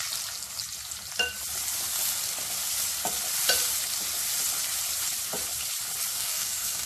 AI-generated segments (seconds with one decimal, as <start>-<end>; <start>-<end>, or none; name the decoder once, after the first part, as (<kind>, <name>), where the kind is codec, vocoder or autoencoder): 6.1-6.9 (codec, DAC)